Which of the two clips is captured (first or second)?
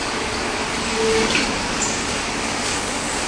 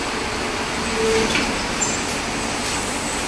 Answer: second